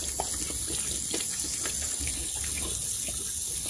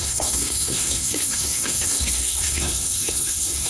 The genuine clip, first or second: first